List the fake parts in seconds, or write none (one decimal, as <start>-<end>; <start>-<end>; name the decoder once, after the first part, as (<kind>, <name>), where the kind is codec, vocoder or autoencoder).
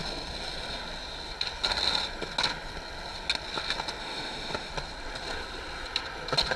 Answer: 4.0-4.7 (autoencoder, DAC-VAE)